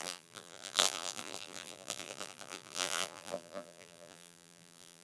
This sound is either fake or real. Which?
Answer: fake